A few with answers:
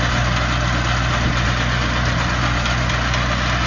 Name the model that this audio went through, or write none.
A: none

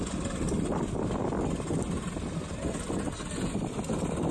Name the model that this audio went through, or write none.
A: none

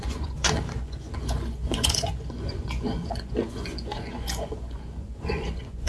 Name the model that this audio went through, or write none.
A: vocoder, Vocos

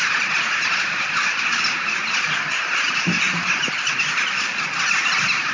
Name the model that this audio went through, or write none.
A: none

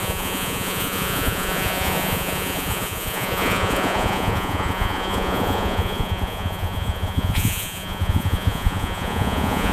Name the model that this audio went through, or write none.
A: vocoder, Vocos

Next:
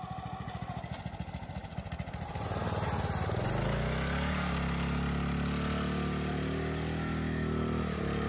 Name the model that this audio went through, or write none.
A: none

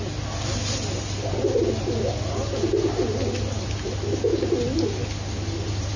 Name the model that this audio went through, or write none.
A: none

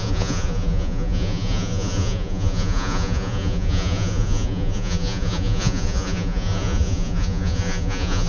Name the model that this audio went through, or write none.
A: vocoder, Vocos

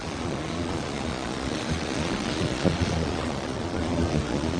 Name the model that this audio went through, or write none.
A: vocoder, Vocos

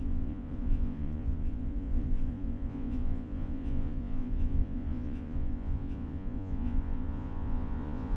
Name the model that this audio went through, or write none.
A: vocoder, Vocos